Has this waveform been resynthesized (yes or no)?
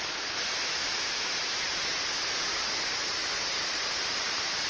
no